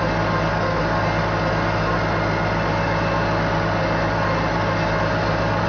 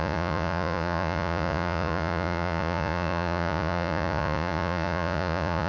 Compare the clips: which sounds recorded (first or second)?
first